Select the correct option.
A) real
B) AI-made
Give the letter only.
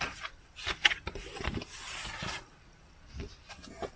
A